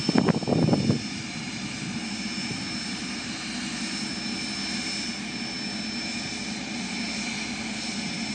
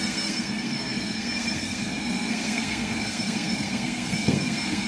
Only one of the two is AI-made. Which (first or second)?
second